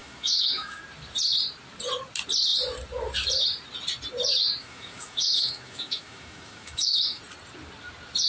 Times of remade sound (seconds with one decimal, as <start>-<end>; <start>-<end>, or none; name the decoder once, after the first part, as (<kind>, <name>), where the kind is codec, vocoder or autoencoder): 0.0-0.8 (autoencoder, DAC-VAE); 4.6-7.2